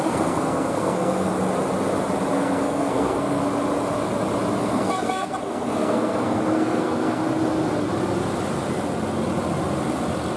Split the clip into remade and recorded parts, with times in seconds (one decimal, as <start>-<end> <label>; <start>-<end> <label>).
0.0-1.3 remade; 1.3-2.3 recorded; 2.3-3.4 remade; 3.4-4.6 recorded; 4.6-7.2 remade; 7.2-10.4 recorded

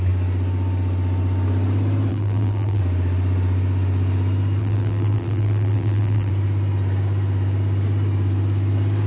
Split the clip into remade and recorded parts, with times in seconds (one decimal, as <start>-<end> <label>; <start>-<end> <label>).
0.0-2.1 recorded; 2.1-2.8 remade; 2.8-4.6 recorded; 4.6-6.3 remade; 6.3-9.1 recorded

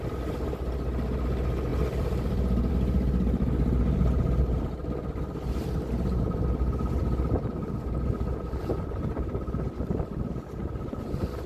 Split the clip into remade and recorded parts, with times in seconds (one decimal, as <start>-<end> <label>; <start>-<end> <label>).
0.0-1.7 recorded; 1.7-2.7 remade; 2.7-11.5 recorded